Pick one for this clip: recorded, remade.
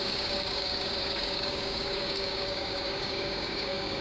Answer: remade